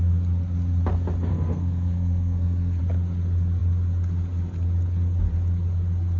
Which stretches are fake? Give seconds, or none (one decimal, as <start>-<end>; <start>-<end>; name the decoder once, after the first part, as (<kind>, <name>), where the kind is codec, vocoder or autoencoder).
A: 1.3-2.8 (codec, SNAC)